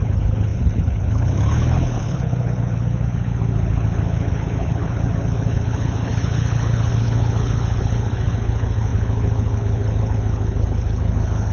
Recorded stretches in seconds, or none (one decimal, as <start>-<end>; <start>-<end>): none